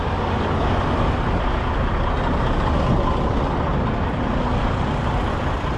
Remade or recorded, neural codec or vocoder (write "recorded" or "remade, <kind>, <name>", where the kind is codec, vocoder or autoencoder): recorded